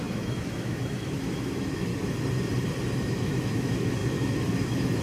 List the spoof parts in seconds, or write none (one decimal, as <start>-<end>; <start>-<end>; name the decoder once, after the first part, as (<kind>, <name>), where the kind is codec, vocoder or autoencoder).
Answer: 0.0-1.9 (autoencoder, DAC-VAE); 3.0-5.0

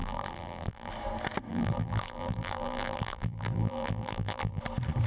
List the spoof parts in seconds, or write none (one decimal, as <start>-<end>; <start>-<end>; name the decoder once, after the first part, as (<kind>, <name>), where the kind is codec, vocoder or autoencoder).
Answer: 0.0-0.9 (vocoder, BigVGAN v2); 1.5-4.6

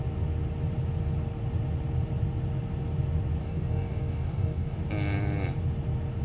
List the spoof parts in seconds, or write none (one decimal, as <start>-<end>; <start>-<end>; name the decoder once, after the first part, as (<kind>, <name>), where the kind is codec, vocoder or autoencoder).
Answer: 3.4-4.8 (codec, DAC)

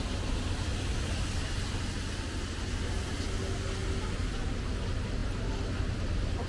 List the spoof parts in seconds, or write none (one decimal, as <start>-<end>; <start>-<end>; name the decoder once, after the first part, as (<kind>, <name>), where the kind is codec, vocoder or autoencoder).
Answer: none

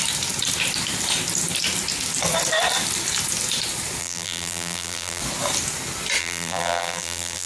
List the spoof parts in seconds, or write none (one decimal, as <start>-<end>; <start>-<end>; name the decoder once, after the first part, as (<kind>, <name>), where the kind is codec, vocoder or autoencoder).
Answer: 4.0-5.2 (vocoder, BigVGAN v2); 6.2-7.5

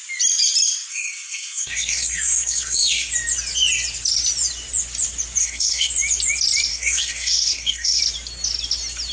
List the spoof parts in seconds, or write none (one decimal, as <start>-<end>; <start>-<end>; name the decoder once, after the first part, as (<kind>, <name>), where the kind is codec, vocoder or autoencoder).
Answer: 0.9-3.1 (codec, SNAC); 5.4-5.9; 6.7-8.0

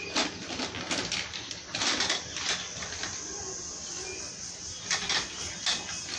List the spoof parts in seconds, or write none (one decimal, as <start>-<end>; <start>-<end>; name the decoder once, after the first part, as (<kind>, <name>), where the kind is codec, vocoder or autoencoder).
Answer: none

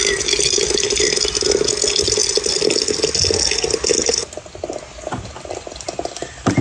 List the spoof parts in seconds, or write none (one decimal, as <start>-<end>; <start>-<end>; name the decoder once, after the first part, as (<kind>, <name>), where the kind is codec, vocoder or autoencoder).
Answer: none